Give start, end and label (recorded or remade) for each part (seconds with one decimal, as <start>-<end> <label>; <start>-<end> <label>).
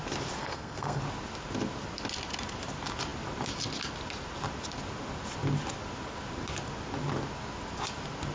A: 0.0-0.4 recorded; 0.4-1.0 remade; 1.0-8.3 recorded